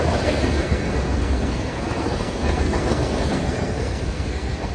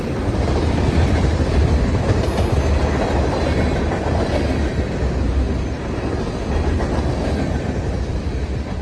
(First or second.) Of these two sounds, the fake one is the first